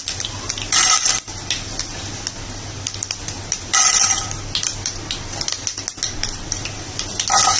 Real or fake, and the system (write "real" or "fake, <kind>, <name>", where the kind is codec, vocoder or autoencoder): real